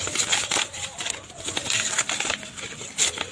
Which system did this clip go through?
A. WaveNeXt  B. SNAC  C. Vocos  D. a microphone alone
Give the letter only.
D